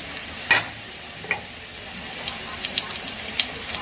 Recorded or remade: recorded